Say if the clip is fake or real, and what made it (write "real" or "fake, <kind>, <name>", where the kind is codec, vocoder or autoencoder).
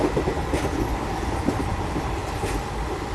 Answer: real